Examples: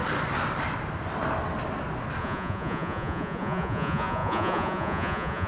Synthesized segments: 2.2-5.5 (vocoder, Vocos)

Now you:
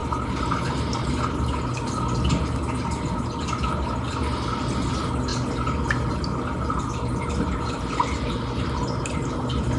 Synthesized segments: none

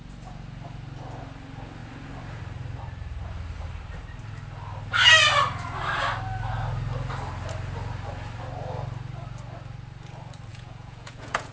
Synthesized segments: 10.5-11.5 (vocoder, Vocos)

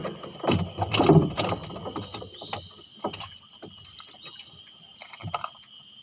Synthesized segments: none